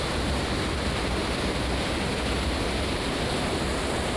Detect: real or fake real